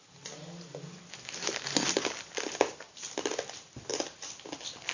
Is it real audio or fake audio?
real